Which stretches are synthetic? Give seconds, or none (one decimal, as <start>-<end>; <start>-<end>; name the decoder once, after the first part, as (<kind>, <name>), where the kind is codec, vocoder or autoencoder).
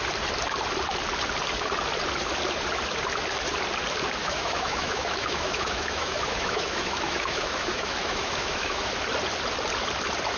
4.2-8.9 (autoencoder, DAC-VAE)